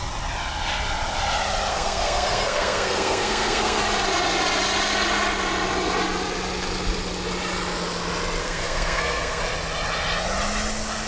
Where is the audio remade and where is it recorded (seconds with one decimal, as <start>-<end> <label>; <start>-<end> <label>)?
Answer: 0.0-1.7 recorded; 1.7-3.8 remade; 3.8-8.4 recorded; 8.4-9.4 remade; 9.4-11.1 recorded